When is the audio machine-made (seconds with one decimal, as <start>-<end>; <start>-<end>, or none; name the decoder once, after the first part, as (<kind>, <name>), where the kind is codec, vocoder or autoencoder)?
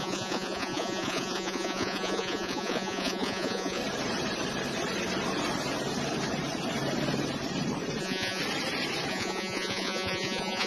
0.0-3.8 (vocoder, Vocos); 8.0-8.4; 9.1-10.7